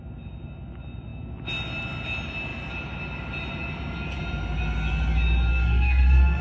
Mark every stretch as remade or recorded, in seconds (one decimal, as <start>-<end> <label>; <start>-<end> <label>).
0.0-5.5 recorded; 5.5-6.4 remade